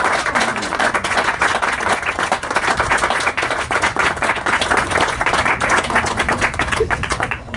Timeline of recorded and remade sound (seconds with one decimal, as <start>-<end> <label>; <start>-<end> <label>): 0.0-7.6 remade